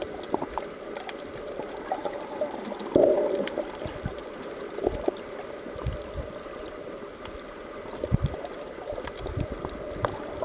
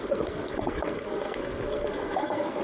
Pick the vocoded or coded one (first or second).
second